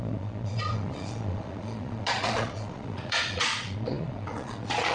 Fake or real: fake